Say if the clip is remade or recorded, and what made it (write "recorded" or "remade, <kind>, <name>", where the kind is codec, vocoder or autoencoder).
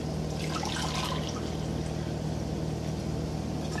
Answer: recorded